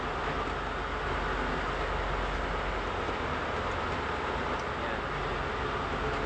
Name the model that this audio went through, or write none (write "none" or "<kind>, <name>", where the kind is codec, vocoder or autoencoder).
none